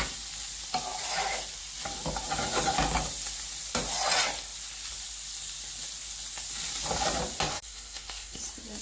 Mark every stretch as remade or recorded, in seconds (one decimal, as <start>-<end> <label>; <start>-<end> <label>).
0.0-7.5 recorded; 7.5-8.4 remade; 8.4-8.8 recorded